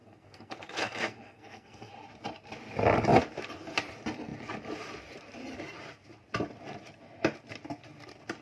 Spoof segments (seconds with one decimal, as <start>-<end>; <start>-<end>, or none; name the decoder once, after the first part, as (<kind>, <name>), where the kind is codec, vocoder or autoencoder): 0.0-1.9 (codec, SNAC)